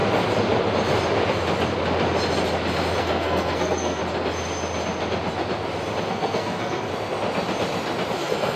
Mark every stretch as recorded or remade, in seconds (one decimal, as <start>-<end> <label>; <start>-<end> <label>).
0.0-3.0 recorded; 3.0-4.0 remade; 4.0-6.1 recorded; 6.1-6.9 remade; 6.9-8.2 recorded; 8.2-8.6 remade